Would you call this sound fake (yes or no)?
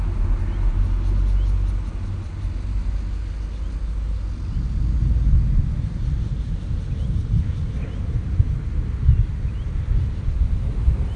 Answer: no